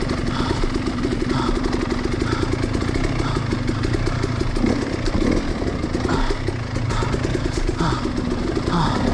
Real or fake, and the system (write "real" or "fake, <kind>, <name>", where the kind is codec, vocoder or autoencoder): real